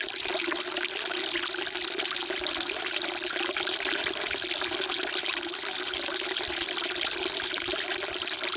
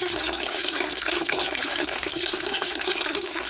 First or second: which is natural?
first